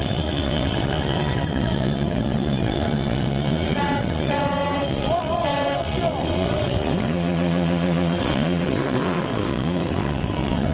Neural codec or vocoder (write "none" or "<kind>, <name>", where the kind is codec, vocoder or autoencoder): vocoder, WaveNeXt